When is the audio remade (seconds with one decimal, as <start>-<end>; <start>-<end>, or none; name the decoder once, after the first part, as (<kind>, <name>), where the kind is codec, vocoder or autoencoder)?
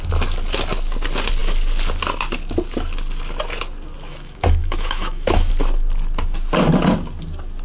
4.1-5.5 (autoencoder, DAC-VAE)